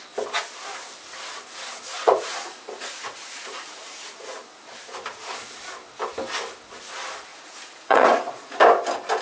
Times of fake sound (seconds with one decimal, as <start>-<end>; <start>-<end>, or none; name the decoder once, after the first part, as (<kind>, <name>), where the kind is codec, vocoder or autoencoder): 1.9-4.4 (vocoder, Vocos); 7.3-8.5